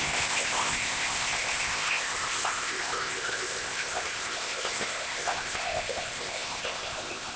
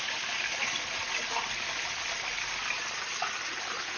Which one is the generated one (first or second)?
first